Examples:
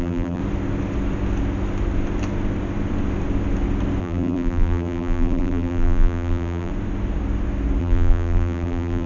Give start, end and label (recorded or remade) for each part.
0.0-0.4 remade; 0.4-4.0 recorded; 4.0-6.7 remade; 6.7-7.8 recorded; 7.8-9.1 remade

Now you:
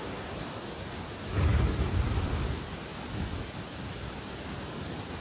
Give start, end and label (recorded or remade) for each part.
0.0-5.2 recorded

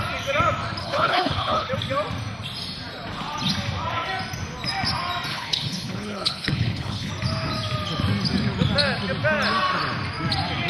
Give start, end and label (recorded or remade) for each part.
0.0-0.8 recorded; 0.8-1.7 remade; 1.7-5.3 recorded; 5.3-7.1 remade; 7.1-10.7 recorded

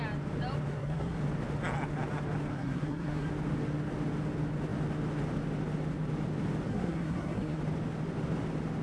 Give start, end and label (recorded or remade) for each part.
0.0-0.7 recorded; 0.7-1.2 remade; 1.2-2.5 recorded; 2.5-3.3 remade; 3.3-6.7 recorded; 6.7-7.6 remade; 7.6-8.8 recorded

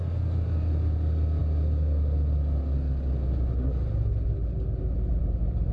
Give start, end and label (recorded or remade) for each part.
0.0-5.7 recorded

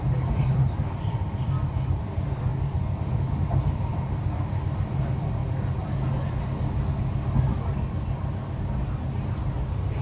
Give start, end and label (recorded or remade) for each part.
0.0-2.5 remade; 2.5-3.0 recorded; 3.0-3.9 remade; 3.9-4.5 recorded; 4.5-5.4 remade; 5.4-10.0 recorded